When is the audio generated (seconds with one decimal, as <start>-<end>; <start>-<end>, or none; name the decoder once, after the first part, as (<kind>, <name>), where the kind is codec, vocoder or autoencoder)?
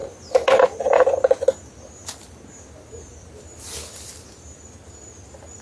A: none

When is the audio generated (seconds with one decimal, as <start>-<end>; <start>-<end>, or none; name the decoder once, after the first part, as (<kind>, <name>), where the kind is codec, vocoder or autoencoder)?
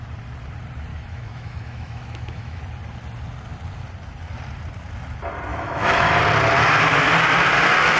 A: 0.9-2.6 (autoencoder, DAC-VAE); 5.5-6.2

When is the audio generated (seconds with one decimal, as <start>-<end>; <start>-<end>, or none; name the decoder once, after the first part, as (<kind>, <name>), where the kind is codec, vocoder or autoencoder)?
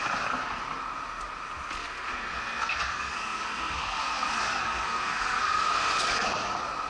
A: 1.8-5.9 (codec, SNAC)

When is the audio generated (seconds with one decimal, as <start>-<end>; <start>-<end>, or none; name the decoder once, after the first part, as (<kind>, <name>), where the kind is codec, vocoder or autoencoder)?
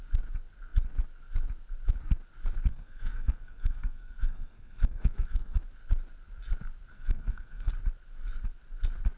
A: 2.7-5.6 (codec, SNAC); 6.9-7.7